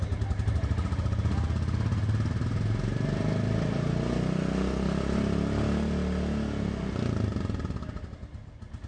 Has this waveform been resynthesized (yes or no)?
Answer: no